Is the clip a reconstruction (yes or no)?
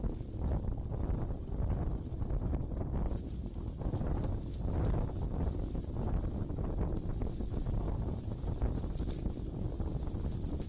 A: no